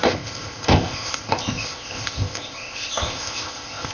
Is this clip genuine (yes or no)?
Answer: no